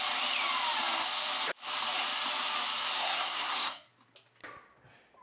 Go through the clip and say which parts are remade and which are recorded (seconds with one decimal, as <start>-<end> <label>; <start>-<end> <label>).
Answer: 0.0-3.0 recorded; 3.0-3.9 remade; 3.9-5.2 recorded